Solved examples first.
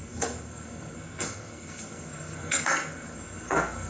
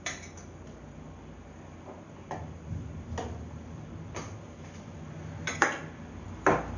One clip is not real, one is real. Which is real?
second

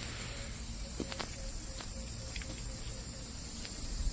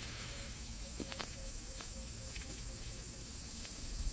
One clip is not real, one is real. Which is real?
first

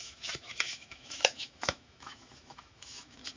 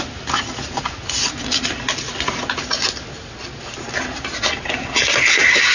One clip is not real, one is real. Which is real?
second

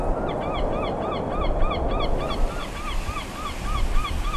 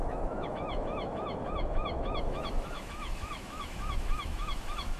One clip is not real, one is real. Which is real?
first